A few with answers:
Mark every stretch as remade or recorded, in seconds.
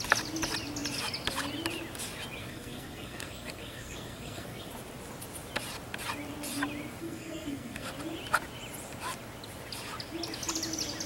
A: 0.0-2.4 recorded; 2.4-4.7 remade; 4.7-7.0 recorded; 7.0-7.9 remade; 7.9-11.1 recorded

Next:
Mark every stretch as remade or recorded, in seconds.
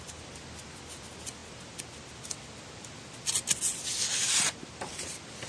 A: 0.0-5.5 recorded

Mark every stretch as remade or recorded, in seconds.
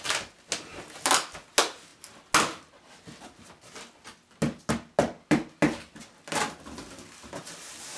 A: 0.0-8.0 recorded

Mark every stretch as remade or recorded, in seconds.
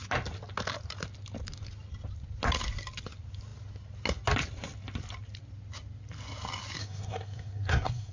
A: 0.0-6.8 recorded; 6.8-8.1 remade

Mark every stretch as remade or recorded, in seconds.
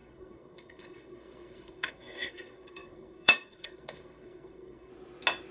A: 0.0-4.9 remade; 4.9-5.5 recorded